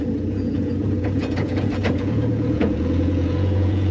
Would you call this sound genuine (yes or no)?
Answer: no